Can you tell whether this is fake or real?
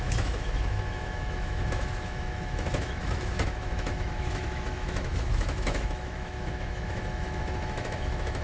fake